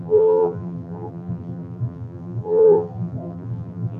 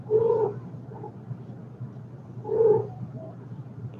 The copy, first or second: first